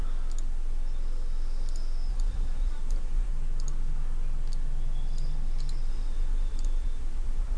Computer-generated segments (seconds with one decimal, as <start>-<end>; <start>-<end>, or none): 2.1-3.3; 5.9-7.6